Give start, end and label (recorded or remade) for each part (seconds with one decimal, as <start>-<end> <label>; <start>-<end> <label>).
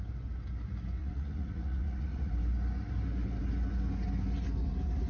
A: 0.0-1.0 recorded; 1.0-2.3 remade; 2.3-5.1 recorded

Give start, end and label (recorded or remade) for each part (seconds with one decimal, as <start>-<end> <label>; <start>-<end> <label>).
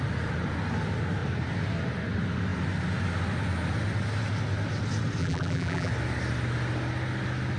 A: 0.0-5.2 recorded; 5.2-5.9 remade; 5.9-7.6 recorded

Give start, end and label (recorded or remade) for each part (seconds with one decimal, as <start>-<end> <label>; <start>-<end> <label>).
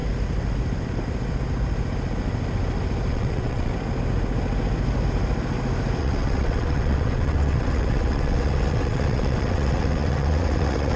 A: 0.0-3.1 recorded; 3.1-3.7 remade; 3.7-6.0 recorded; 6.0-11.0 remade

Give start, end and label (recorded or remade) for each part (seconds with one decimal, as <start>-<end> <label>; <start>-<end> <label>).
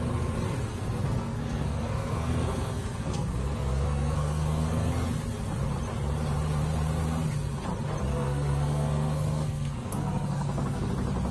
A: 0.0-0.7 recorded; 0.7-4.9 remade; 4.9-8.1 recorded; 8.1-10.9 remade; 10.9-11.3 recorded